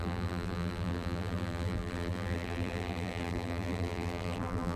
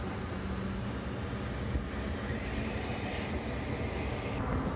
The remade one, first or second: first